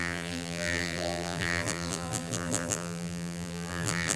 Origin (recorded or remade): remade